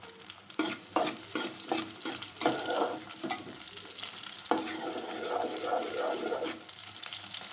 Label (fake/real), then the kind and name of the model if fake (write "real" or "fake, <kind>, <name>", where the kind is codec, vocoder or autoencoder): fake, vocoder, BigVGAN v2